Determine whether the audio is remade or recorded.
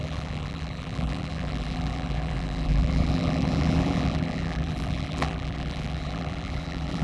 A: remade